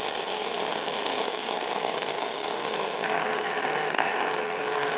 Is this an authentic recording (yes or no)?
no